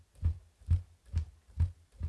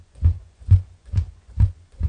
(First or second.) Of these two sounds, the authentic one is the first